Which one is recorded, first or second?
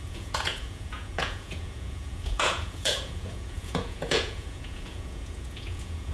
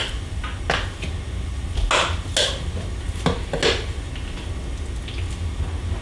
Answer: second